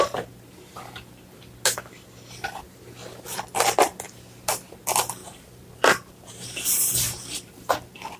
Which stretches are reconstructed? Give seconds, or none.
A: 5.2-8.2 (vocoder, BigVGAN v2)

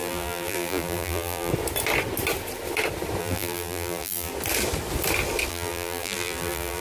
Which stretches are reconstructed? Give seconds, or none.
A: 0.0-1.5 (vocoder, BigVGAN v2); 3.2-4.3; 5.5-6.8